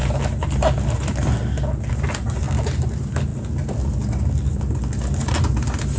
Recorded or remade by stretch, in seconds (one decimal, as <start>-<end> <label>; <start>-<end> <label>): 0.0-6.0 recorded